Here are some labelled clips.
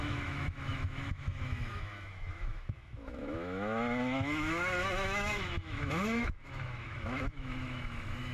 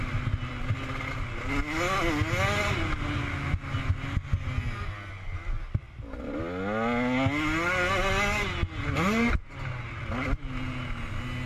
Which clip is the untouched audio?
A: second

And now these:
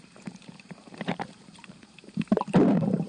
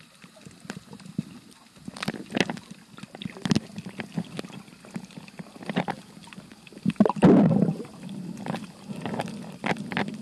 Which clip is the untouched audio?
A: second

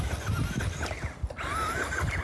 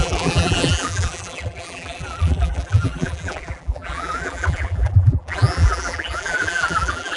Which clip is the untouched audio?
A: first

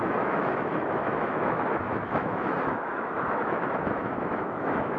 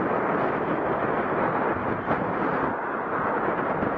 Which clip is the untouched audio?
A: second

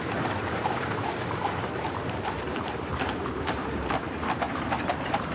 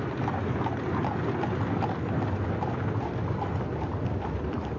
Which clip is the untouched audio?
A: second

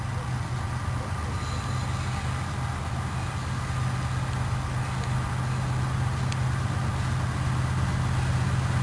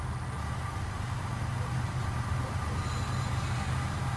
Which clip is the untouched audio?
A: first